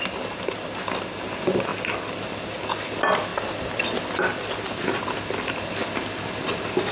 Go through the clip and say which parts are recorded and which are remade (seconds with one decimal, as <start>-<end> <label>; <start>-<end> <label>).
0.0-6.9 recorded